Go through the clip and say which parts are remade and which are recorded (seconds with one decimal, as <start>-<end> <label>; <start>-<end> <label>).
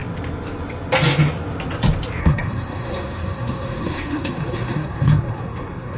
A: 0.0-2.2 recorded; 2.2-6.0 remade